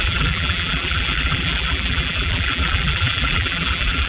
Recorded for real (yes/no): no